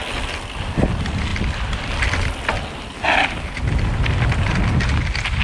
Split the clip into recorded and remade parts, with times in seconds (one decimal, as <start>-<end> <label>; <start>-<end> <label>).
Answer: 0.0-1.3 recorded; 1.3-4.5 remade; 4.5-5.4 recorded